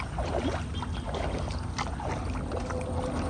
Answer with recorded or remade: recorded